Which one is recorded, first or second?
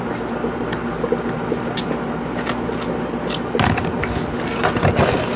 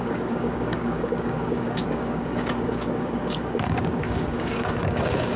first